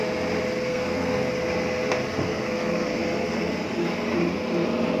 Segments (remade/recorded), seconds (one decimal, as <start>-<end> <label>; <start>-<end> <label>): 0.0-0.7 recorded; 0.7-1.3 remade; 1.3-2.2 recorded; 2.2-3.5 remade; 3.5-5.0 recorded